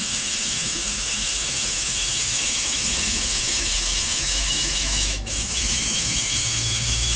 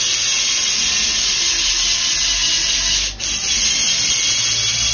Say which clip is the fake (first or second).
first